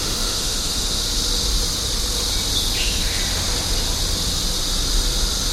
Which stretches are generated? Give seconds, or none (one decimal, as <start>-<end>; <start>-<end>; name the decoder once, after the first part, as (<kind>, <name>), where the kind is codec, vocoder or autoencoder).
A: 0.0-1.0 (autoencoder, DAC-VAE); 2.8-3.2